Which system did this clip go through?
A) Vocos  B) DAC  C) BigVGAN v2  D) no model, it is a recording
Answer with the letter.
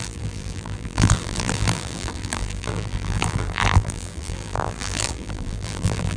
C